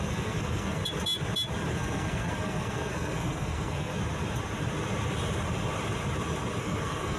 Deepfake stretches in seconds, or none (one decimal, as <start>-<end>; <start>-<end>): 0.0-0.8; 1.7-3.9; 6.6-7.2